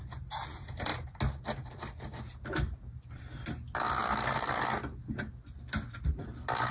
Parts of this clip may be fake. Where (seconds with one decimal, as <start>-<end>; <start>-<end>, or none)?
none

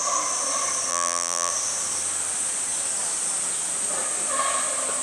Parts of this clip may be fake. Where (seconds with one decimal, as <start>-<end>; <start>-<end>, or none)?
0.9-1.5